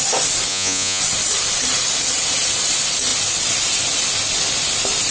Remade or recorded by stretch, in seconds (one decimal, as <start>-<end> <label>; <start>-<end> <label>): 0.0-0.5 recorded; 0.5-1.0 remade; 1.0-5.1 recorded